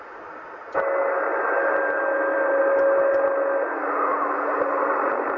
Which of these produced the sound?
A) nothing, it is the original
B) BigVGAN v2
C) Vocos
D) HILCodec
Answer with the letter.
A